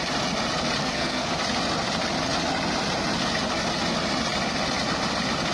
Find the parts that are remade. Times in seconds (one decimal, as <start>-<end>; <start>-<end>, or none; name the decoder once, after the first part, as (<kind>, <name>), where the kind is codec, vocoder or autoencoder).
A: 0.8-1.3 (codec, SNAC)